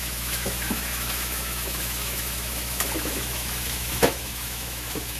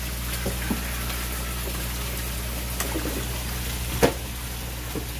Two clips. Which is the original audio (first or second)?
second